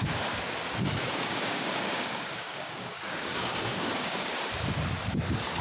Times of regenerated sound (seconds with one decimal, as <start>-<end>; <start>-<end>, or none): 1.0-4.4

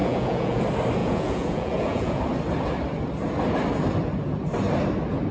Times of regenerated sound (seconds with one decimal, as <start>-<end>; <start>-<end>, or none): 0.0-0.6; 1.0-2.2